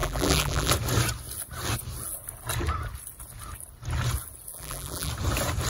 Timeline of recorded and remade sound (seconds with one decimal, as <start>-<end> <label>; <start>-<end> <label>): 0.0-0.7 remade; 0.7-4.5 recorded; 4.5-5.1 remade; 5.1-5.7 recorded